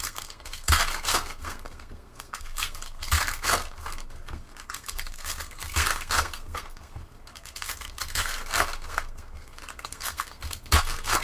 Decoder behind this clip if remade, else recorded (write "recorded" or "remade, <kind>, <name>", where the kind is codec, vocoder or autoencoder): remade, codec, SNAC